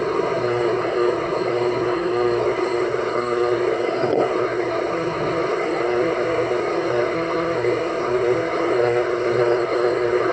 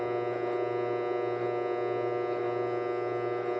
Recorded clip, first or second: second